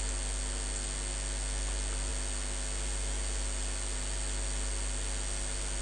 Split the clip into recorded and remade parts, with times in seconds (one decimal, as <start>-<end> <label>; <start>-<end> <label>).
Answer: 0.0-5.8 recorded

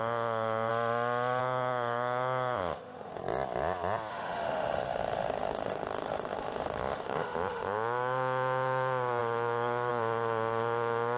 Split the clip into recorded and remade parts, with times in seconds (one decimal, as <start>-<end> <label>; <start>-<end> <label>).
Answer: 0.0-0.7 remade; 0.7-1.4 recorded; 1.4-3.2 remade; 3.2-4.1 recorded; 4.1-11.2 remade

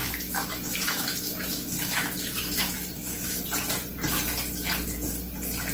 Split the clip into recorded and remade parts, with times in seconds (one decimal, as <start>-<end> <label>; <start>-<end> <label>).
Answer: 0.0-3.4 remade; 3.4-5.7 recorded